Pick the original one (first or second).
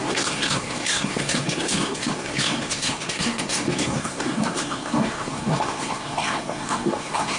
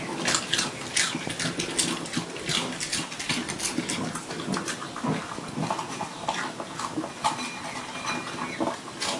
second